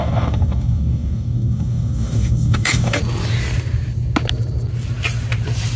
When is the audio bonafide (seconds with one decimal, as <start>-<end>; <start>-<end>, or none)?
3.0-5.8